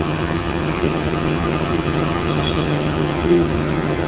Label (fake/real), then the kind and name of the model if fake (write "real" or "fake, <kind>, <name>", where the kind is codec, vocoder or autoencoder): fake, vocoder, HiFi-GAN